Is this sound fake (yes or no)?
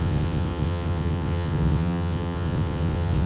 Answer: yes